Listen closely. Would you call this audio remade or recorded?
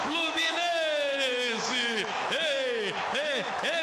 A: remade